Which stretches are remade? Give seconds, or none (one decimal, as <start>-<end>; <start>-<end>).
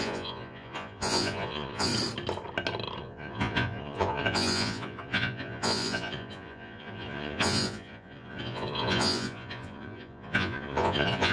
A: 0.0-1.9; 3.0-11.3